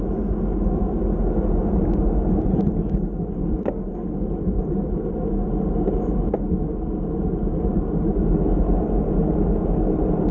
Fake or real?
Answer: real